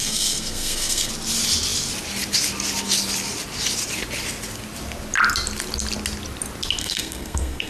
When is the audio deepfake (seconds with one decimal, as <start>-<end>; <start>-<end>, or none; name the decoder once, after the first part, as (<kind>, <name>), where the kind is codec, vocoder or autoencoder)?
0.0-1.1 (codec, SNAC); 6.8-7.7